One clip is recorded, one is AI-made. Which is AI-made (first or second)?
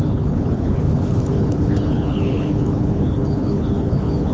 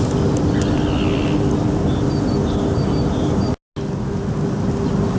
first